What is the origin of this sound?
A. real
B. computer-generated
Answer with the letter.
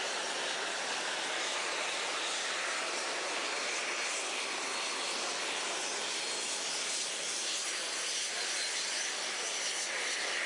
A